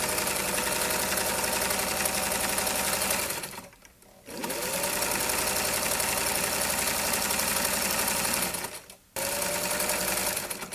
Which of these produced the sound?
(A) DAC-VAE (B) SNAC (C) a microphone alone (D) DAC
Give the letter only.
C